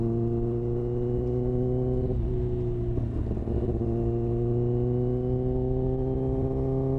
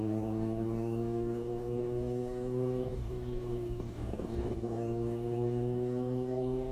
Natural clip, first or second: first